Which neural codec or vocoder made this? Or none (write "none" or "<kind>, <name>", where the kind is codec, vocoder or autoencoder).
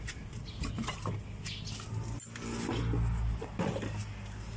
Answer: none